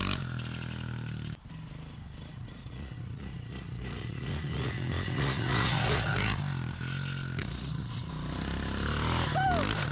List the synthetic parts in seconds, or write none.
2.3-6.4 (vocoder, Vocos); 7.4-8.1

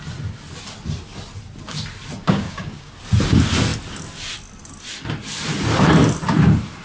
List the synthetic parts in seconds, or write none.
2.2-2.9 (codec, DAC)

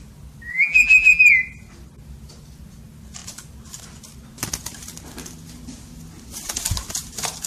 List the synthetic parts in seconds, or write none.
0.5-1.2 (vocoder, BigVGAN v2)

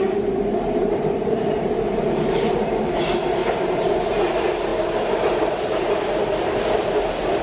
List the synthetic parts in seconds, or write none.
0.5-3.0 (vocoder, BigVGAN v2); 3.4-3.9

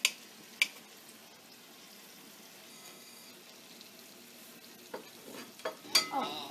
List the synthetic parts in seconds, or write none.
2.7-3.3 (codec, DAC)

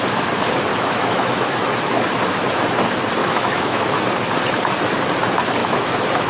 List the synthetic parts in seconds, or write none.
0.7-1.7 (autoencoder, DAC-VAE); 3.2-4.0; 5.6-6.3

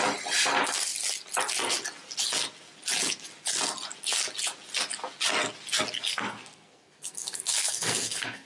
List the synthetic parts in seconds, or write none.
6.1-8.5 (codec, SNAC)

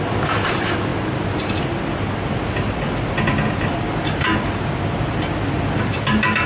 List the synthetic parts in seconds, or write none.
none